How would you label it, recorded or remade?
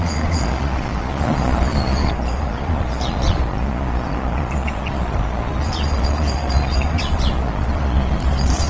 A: remade